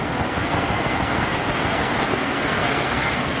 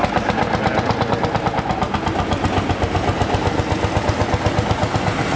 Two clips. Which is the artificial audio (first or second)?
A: first